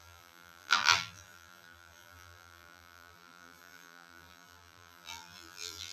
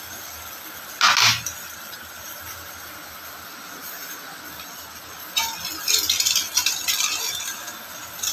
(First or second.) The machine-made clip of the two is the first